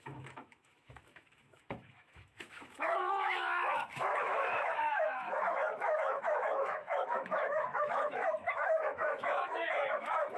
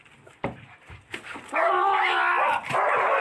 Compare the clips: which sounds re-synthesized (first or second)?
first